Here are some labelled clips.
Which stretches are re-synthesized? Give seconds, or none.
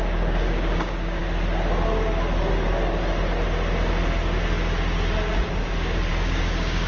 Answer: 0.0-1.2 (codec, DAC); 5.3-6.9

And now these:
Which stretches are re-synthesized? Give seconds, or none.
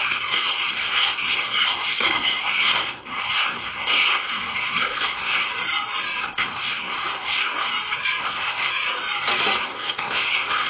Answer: 0.0-5.5 (codec, SNAC); 6.2-7.7; 8.2-8.7; 9.6-10.7